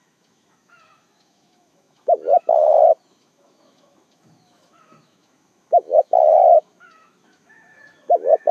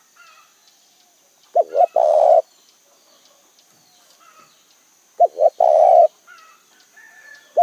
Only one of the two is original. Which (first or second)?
second